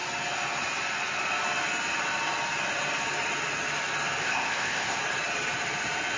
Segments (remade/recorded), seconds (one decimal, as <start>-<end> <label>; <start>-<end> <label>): 0.0-4.2 recorded; 4.2-5.0 remade; 5.0-6.2 recorded